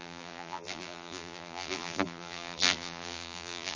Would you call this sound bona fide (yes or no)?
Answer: no